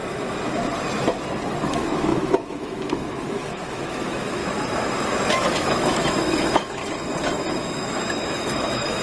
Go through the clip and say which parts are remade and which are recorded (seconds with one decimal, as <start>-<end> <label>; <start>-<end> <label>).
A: 0.0-1.5 recorded; 1.5-4.4 remade; 4.4-5.3 recorded; 5.3-6.8 remade; 6.8-7.5 recorded; 7.5-9.0 remade